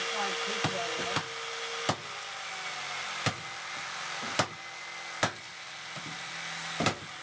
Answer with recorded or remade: recorded